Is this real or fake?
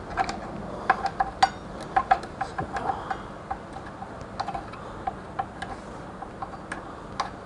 real